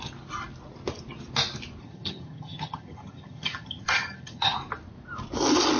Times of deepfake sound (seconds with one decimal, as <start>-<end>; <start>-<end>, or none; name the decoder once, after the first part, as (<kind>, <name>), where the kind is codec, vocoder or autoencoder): 1.8-4.5 (vocoder, HiFi-GAN)